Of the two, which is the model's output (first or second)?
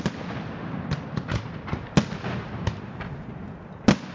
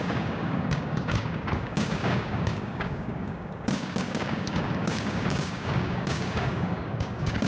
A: second